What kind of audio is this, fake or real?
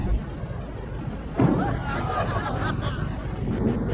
real